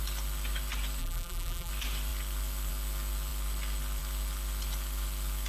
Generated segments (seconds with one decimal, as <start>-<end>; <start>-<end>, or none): 1.0-1.7